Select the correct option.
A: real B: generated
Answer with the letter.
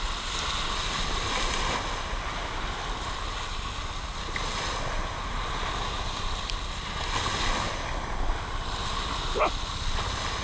A